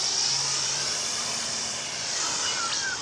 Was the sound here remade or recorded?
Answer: remade